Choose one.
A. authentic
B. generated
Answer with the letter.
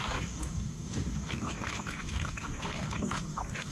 B